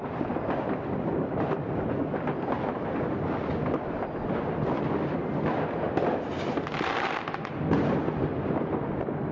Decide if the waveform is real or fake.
real